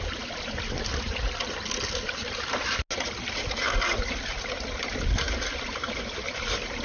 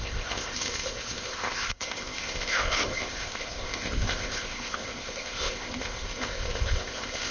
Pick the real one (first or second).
first